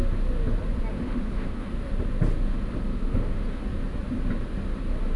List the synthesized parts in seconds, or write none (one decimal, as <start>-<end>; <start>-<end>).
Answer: 0.9-1.7; 2.9-3.6